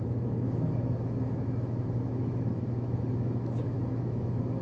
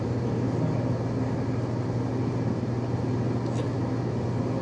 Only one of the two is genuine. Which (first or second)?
second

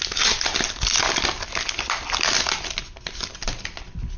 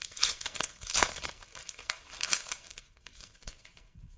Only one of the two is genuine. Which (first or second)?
first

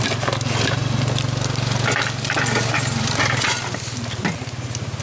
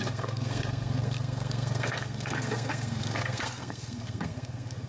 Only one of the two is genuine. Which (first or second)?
first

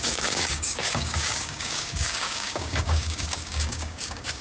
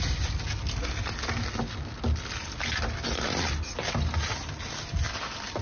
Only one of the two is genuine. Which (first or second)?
second